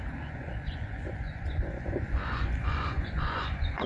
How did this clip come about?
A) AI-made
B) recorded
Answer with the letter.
A